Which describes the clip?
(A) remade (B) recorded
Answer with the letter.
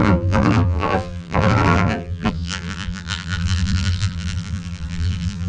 A